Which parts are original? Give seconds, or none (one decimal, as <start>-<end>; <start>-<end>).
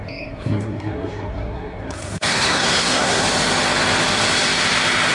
3.2-5.1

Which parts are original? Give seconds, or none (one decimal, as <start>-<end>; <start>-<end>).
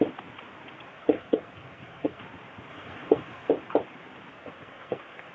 0.0-0.9; 2.2-2.7; 3.5-4.3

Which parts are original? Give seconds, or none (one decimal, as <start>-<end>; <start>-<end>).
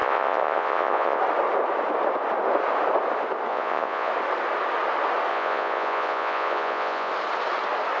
1.2-3.5; 4.1-5.3; 7.1-8.0